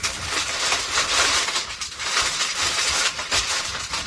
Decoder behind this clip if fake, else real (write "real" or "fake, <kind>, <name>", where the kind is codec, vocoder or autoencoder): fake, vocoder, BigVGAN v2